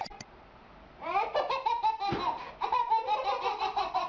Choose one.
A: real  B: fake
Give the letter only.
A